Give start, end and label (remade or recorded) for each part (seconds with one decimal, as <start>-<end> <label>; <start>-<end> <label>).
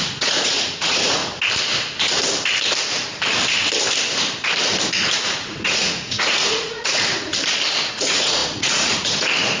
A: 0.0-1.2 remade; 1.2-5.1 recorded; 5.1-7.3 remade; 7.3-8.0 recorded; 8.0-9.6 remade